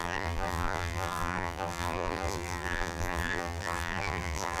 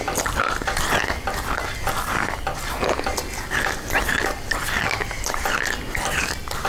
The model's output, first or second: first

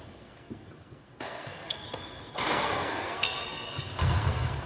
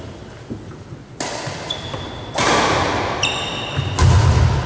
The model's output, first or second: first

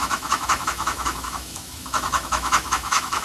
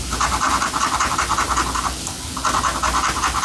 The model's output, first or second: first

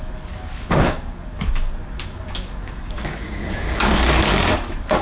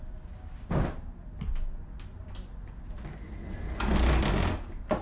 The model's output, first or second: first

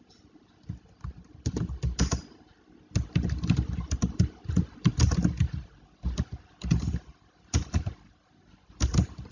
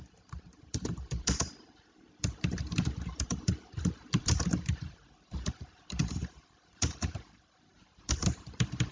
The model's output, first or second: second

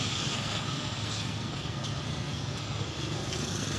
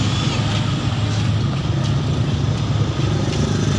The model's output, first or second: first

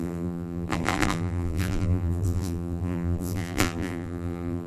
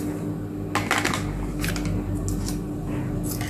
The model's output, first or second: first